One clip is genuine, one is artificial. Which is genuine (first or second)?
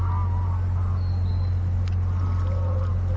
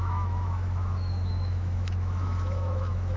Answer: first